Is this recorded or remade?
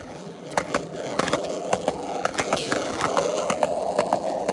remade